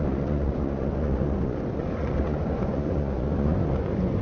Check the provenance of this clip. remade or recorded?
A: remade